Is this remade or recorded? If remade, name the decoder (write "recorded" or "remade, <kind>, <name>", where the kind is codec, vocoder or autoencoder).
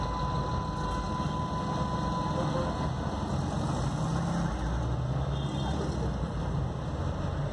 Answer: recorded